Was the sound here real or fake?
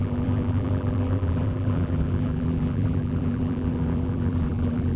fake